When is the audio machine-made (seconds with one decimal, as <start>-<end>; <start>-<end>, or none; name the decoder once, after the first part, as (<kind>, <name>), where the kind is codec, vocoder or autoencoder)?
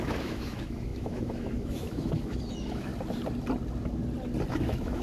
0.0-2.9 (autoencoder, DAC-VAE); 4.5-5.0